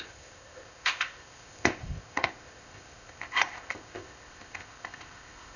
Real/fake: fake